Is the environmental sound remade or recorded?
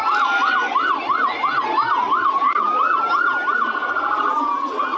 recorded